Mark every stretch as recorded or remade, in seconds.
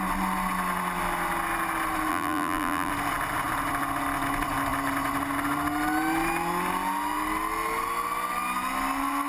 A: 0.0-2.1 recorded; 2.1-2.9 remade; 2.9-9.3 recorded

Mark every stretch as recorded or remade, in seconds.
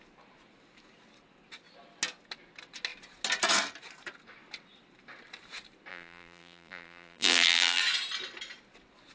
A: 0.0-5.9 recorded; 5.9-7.8 remade; 7.8-9.1 recorded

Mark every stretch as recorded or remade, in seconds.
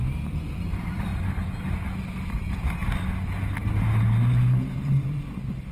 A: 0.0-1.1 remade; 1.1-2.3 recorded; 2.3-2.8 remade; 2.8-4.7 recorded; 4.7-5.7 remade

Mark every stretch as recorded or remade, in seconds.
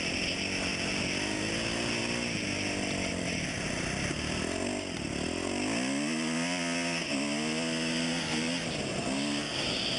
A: 0.0-10.0 recorded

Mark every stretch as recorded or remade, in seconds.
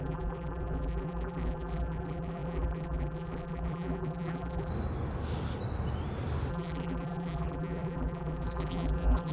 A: 0.0-4.7 remade; 4.7-6.5 recorded; 6.5-9.3 remade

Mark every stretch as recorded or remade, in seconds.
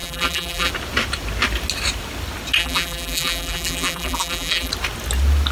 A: 0.0-0.7 remade; 0.7-2.6 recorded; 2.6-4.7 remade; 4.7-5.5 recorded